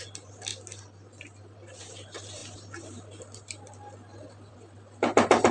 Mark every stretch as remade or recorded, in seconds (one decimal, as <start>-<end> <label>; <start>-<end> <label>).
0.0-5.5 recorded